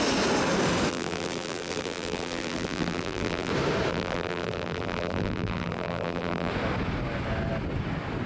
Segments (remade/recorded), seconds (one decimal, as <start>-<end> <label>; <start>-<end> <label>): 0.0-0.9 recorded; 0.9-3.5 remade; 3.5-3.9 recorded; 3.9-6.5 remade; 6.5-8.3 recorded